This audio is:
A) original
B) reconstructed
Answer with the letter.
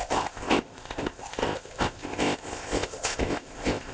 B